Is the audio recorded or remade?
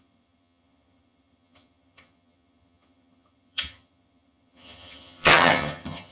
remade